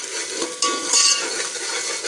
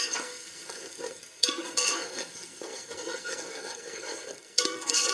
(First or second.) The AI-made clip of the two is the second